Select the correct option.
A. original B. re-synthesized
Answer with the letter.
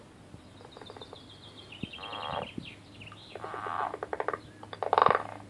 A